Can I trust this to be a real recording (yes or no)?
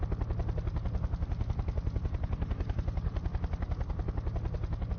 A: yes